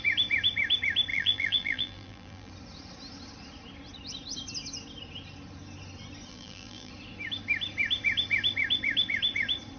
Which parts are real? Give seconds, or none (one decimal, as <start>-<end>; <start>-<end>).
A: 0.0-1.1; 2.5-6.3; 6.9-9.8